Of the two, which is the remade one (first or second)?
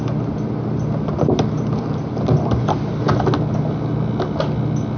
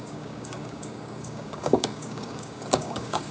second